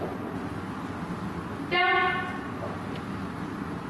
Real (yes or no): yes